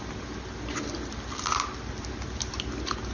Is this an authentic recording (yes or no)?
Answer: yes